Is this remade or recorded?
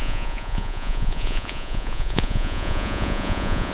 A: remade